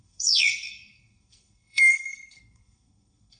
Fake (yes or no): yes